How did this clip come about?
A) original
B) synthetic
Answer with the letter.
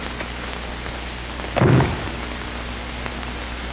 A